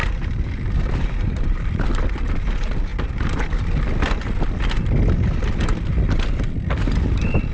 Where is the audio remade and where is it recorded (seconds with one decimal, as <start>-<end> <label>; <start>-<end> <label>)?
0.0-1.9 remade; 1.9-7.5 recorded